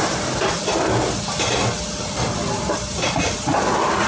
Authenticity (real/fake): real